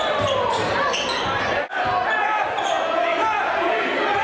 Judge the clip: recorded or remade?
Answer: recorded